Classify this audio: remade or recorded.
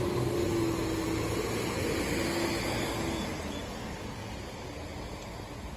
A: recorded